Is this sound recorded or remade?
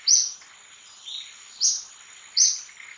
recorded